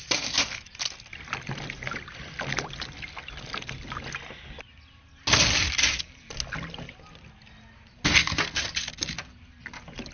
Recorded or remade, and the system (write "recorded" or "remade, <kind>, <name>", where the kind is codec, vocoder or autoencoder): recorded